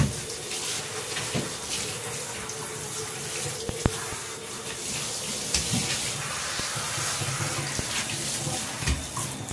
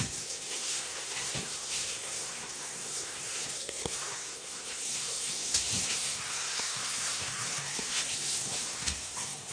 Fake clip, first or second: second